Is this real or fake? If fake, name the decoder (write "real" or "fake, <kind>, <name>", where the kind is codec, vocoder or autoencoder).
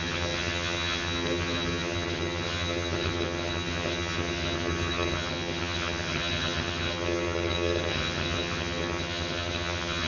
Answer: fake, vocoder, HiFi-GAN